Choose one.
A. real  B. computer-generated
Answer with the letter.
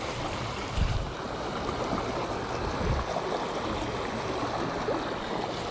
A